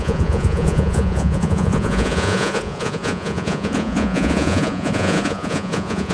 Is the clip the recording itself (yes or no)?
no